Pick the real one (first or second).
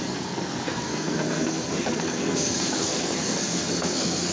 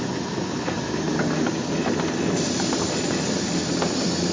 second